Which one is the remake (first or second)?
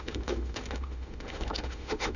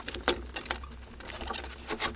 first